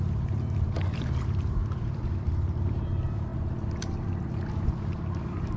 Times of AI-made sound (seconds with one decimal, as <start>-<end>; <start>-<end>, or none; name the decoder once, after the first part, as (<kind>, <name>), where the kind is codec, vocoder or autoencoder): 0.0-5.6 (vocoder, BigVGAN v2)